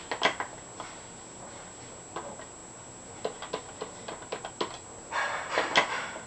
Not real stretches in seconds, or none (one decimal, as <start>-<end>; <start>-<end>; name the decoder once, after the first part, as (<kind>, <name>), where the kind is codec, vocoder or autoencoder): none